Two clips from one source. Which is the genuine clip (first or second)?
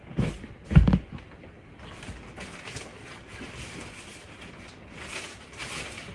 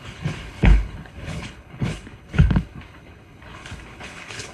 first